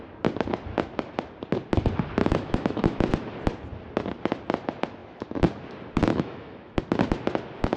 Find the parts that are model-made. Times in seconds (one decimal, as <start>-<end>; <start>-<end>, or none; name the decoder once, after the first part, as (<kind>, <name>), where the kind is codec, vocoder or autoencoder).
2.2-3.1 (autoencoder, DAC-VAE); 6.1-6.8